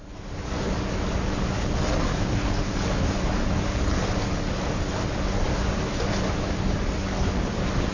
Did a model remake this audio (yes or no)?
no